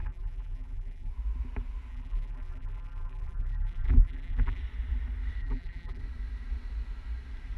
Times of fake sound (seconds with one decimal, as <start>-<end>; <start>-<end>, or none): 0.0-1.1; 1.9-4.6; 5.4-6.0